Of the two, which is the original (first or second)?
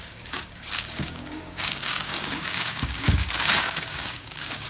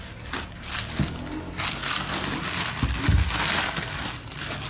second